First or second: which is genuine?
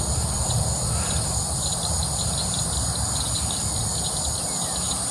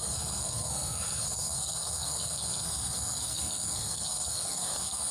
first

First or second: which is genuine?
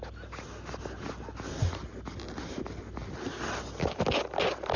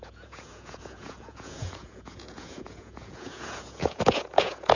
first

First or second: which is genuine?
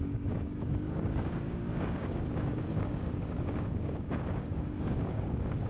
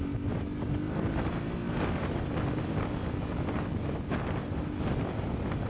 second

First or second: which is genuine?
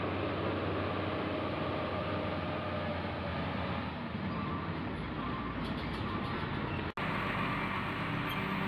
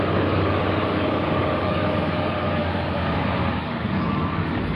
first